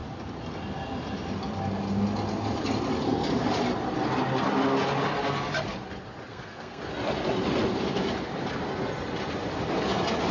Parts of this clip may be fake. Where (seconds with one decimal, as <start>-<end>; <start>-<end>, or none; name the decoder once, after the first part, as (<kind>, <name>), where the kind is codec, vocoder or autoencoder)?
6.3-6.9 (codec, SNAC)